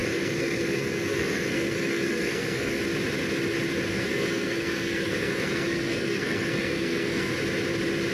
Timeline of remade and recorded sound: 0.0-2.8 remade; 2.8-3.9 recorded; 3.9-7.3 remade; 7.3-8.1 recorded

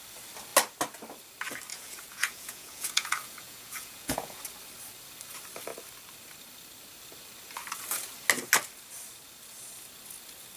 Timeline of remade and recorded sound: 0.0-1.7 recorded; 1.7-4.4 remade; 4.4-10.6 recorded

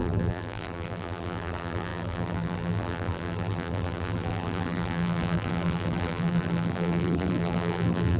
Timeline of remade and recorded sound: 0.0-8.2 remade

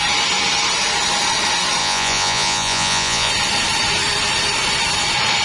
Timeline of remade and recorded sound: 0.0-1.8 recorded; 1.8-3.3 remade; 3.3-5.4 recorded

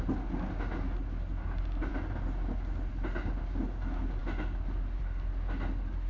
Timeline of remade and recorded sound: 0.0-6.1 recorded

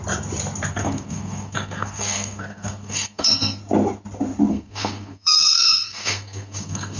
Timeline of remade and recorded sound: 0.0-0.7 recorded; 0.7-3.6 remade; 3.6-4.5 recorded; 4.5-7.0 remade